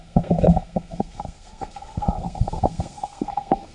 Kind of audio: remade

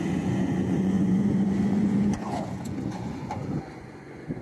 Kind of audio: remade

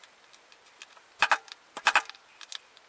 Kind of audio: recorded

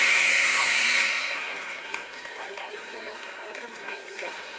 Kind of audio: remade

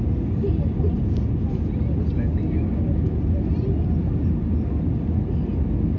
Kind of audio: recorded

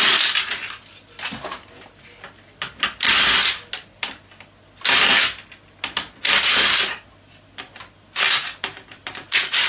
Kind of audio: recorded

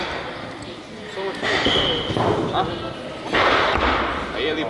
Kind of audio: recorded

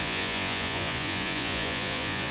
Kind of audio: remade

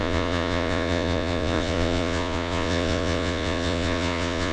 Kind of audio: remade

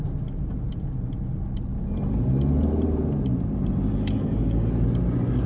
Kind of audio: recorded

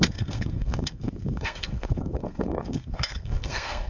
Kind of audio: remade